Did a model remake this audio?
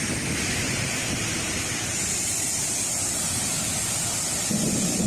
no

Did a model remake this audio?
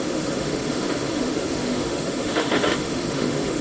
yes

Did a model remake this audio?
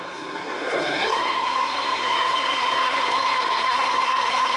yes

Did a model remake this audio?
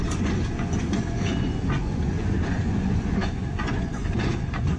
yes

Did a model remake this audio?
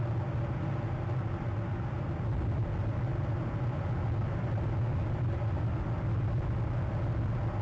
no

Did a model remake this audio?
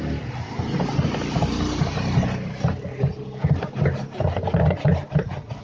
no